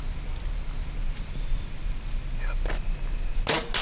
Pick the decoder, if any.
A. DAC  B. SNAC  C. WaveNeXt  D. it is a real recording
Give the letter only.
D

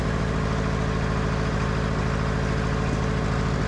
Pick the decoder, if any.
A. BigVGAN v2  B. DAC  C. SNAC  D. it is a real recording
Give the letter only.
D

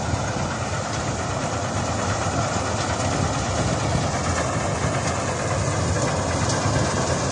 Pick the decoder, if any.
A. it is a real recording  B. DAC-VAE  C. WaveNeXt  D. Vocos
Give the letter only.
A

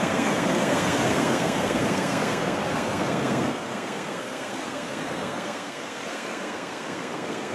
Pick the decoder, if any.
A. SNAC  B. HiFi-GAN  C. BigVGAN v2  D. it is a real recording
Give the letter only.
A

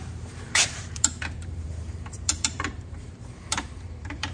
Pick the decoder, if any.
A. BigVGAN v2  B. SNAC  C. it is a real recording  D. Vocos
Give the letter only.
A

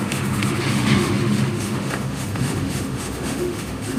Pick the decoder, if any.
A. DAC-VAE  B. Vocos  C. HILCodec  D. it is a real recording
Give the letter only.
A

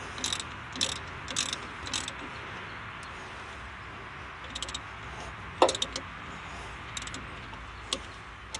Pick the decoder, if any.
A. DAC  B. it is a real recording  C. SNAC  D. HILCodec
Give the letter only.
B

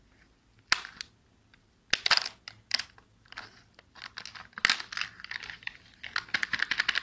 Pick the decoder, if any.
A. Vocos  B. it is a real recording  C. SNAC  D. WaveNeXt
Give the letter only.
B